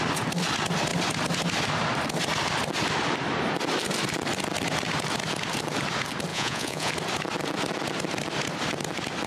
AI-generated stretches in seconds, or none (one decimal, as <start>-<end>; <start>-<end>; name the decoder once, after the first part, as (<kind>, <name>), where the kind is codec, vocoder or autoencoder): 6.3-6.9 (vocoder, Vocos)